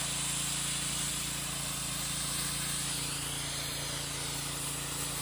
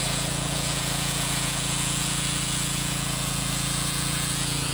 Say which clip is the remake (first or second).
second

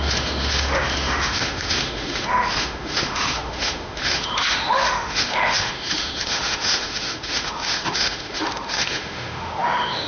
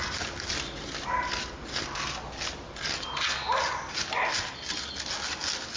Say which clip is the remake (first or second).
first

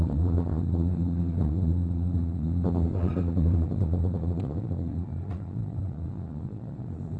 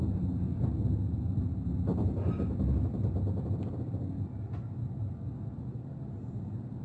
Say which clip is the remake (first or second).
first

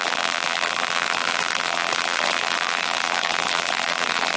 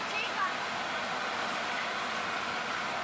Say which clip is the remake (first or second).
first